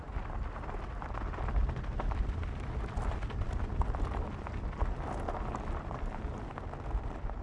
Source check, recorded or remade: recorded